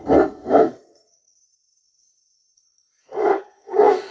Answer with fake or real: fake